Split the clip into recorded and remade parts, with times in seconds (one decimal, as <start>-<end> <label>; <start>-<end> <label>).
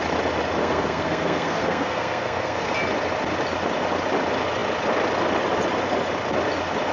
0.0-0.6 recorded; 0.6-2.7 remade; 2.7-6.9 recorded